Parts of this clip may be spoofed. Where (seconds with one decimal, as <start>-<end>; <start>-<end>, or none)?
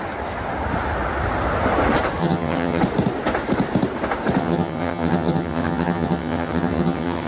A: 2.2-2.8; 4.4-7.3